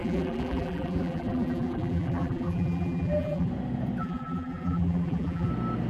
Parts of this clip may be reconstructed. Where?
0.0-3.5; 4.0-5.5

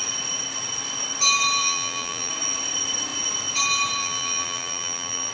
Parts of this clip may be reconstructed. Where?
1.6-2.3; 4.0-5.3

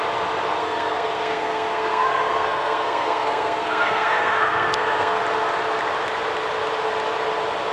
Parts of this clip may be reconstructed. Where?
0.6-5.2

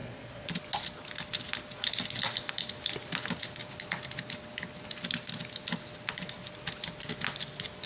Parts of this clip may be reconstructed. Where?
0.0-0.5